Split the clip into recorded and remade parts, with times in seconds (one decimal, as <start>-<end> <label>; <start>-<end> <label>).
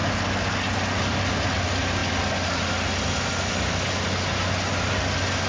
0.0-5.5 recorded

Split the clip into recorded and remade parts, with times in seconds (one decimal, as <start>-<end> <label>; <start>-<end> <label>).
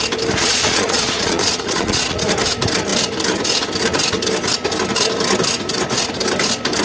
0.0-0.4 recorded; 0.4-2.3 remade; 2.3-6.8 recorded